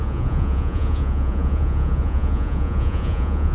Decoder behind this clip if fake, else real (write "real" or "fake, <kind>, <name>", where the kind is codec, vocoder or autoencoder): fake, vocoder, Vocos